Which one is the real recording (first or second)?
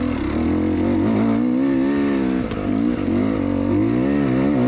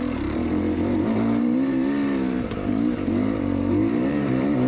first